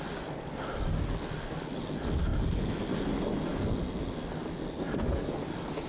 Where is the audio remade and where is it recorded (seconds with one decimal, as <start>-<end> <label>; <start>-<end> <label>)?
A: 0.0-5.9 recorded